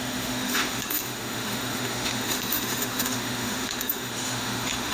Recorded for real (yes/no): no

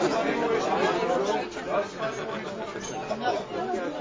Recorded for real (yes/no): yes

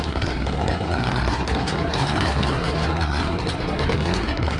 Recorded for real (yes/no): no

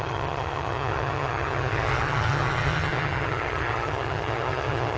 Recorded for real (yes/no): no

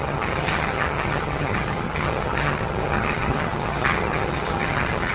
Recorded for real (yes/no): no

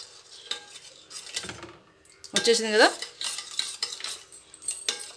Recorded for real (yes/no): yes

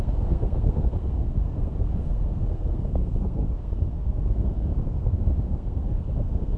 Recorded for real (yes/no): no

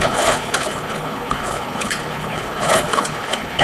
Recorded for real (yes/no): no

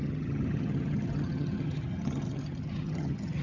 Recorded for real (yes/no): no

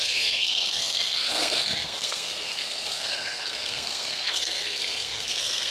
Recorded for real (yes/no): no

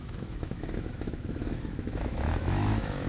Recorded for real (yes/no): no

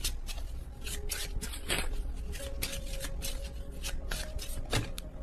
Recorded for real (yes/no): yes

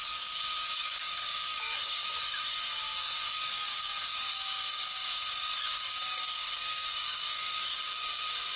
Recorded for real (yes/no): no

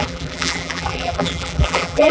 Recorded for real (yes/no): no